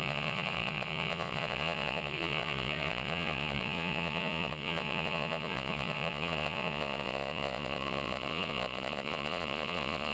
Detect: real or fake fake